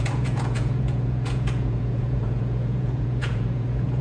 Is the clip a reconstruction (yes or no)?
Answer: yes